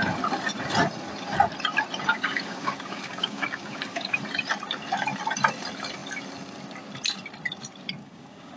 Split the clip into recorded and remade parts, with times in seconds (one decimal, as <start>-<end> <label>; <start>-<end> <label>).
0.0-2.1 recorded; 2.1-4.2 remade; 4.2-8.0 recorded; 8.0-8.6 remade